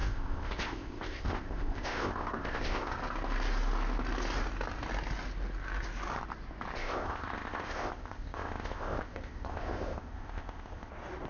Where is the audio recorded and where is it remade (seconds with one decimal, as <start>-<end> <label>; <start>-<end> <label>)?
0.0-2.9 remade; 2.9-6.8 recorded; 6.8-10.9 remade; 10.9-11.3 recorded